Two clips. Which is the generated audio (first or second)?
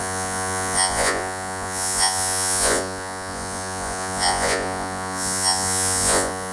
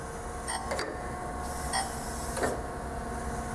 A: first